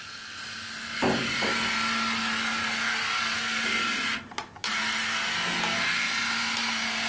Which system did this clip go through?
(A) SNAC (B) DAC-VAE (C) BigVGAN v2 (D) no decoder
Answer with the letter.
C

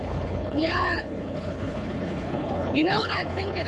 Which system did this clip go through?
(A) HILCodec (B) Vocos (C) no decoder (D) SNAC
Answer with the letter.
A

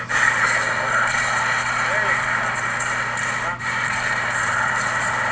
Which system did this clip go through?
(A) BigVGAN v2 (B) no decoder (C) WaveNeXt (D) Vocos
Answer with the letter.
B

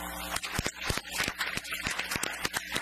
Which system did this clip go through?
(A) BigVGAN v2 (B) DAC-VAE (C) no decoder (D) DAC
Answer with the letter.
C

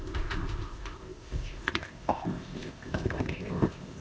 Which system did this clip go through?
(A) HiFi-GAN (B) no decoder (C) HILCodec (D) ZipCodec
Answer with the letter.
D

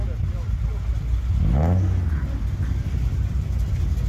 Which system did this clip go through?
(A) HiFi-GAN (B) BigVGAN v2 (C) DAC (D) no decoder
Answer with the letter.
D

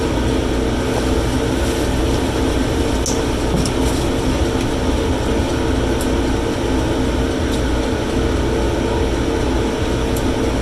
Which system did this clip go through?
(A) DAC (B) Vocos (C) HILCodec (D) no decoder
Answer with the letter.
D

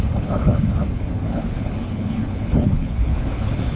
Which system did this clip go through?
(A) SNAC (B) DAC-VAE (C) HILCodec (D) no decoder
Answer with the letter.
C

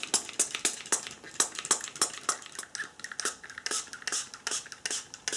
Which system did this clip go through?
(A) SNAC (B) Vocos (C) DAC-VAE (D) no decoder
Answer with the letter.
D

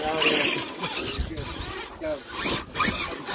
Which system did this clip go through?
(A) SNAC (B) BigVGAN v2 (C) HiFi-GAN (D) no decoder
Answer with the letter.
D